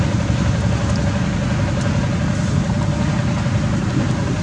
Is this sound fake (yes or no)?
no